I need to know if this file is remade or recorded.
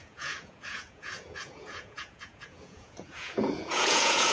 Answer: remade